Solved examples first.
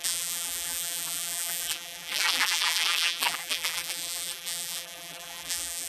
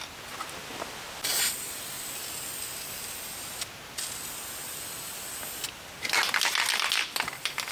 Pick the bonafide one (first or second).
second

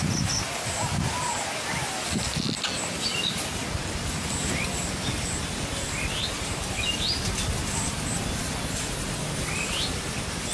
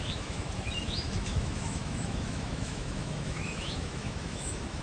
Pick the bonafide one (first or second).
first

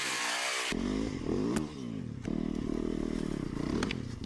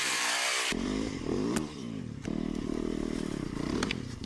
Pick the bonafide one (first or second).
first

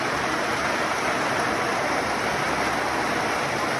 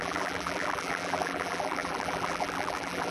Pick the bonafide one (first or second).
first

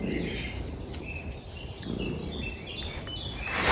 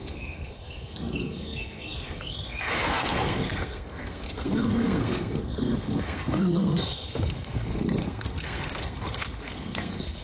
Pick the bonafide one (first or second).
first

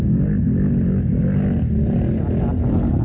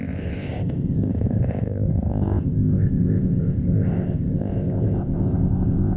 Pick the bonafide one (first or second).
first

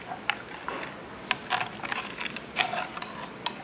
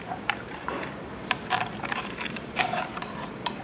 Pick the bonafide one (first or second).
first